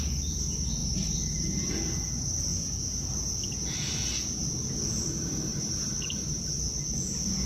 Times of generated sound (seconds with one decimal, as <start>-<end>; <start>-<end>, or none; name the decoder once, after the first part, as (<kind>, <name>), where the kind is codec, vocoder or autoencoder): 0.8-1.7 (vocoder, BigVGAN v2); 5.5-6.4